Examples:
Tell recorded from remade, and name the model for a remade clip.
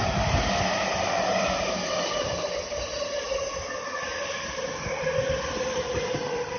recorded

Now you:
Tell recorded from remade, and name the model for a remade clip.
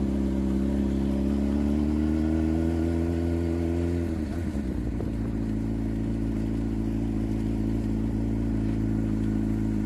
recorded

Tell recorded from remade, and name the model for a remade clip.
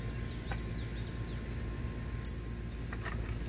recorded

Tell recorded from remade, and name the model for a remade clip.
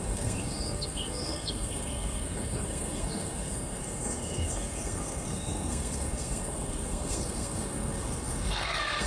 remade, codec, SNAC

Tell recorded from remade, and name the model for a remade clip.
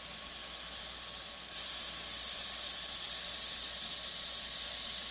recorded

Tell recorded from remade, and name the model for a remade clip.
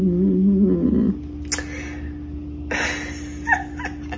recorded